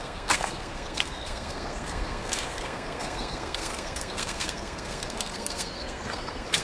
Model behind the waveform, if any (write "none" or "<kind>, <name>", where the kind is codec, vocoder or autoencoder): codec, SNAC